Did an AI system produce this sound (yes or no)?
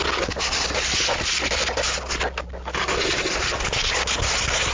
no